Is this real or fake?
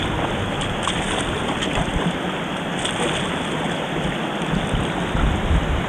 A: real